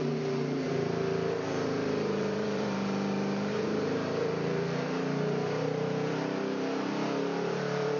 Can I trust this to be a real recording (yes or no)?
no